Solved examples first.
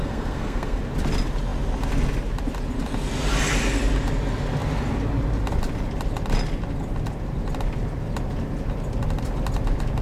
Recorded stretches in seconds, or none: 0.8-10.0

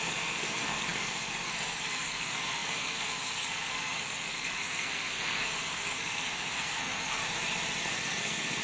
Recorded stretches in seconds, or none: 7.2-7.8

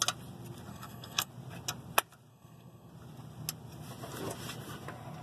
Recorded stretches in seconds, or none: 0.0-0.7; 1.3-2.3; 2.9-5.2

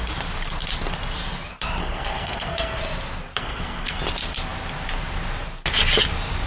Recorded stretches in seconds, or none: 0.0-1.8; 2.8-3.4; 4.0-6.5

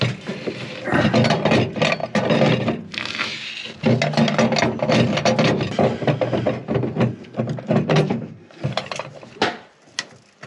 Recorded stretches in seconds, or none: 0.0-7.9; 8.6-10.5

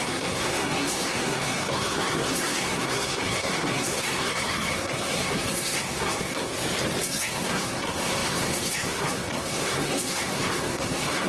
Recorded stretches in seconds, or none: 6.5-7.0

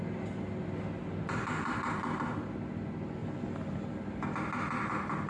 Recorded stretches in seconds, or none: 0.0-5.3

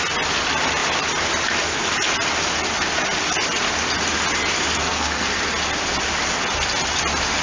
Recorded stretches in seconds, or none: 0.0-4.8; 5.4-7.4